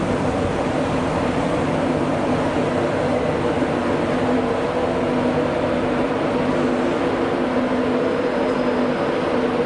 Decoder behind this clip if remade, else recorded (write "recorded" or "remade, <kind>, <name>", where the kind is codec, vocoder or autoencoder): recorded